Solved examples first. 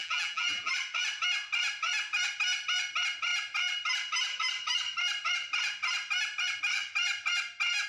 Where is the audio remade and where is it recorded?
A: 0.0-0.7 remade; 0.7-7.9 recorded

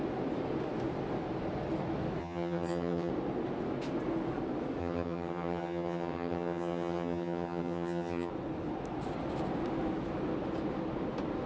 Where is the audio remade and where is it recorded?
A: 0.0-2.2 recorded; 2.2-3.1 remade; 3.1-4.8 recorded; 4.8-8.3 remade; 8.3-11.5 recorded

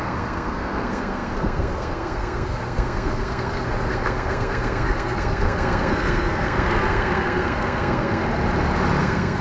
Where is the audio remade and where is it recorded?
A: 0.0-8.2 remade; 8.2-9.0 recorded; 9.0-9.4 remade

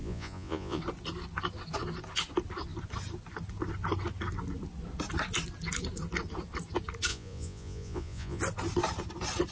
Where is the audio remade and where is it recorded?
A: 0.0-0.8 remade; 0.8-7.1 recorded; 7.1-8.4 remade; 8.4-9.5 recorded

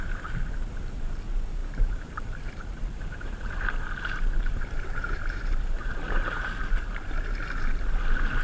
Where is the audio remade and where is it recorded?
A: 0.0-1.6 recorded; 1.6-6.6 remade; 6.6-8.4 recorded

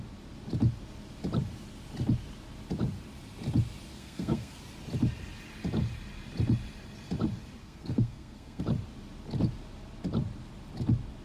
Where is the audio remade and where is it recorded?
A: 0.0-4.0 recorded; 4.0-4.6 remade; 4.6-7.6 recorded; 7.6-8.6 remade; 8.6-11.2 recorded